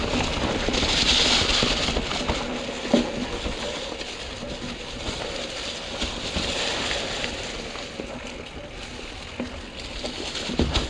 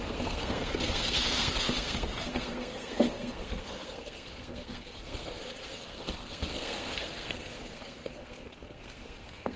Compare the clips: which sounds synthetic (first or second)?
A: second